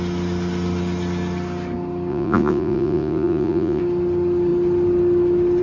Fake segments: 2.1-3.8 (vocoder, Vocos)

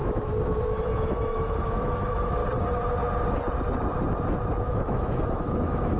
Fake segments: 0.0-2.4 (autoencoder, DAC-VAE); 4.6-6.0

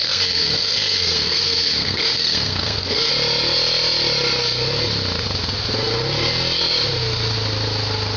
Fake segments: 0.0-3.1 (codec, SNAC)

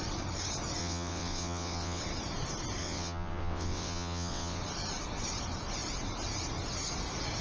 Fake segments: 0.8-2.0 (vocoder, WaveNeXt); 2.8-4.6